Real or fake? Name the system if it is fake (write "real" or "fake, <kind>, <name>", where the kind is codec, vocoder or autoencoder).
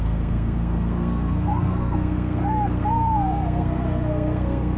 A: fake, codec, SNAC